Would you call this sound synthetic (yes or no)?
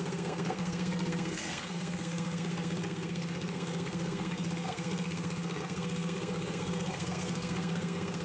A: yes